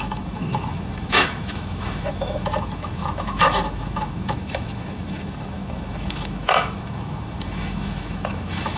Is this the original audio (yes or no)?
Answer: no